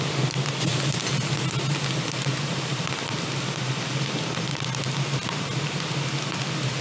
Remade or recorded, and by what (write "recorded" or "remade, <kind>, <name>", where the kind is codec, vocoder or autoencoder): recorded